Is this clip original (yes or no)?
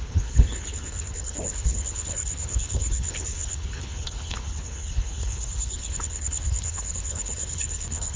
no